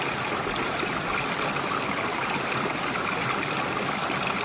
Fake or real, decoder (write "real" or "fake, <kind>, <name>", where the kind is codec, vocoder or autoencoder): real